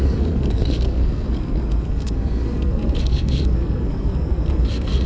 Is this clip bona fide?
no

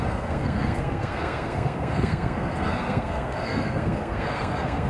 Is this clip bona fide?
no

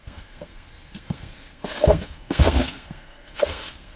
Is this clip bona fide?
no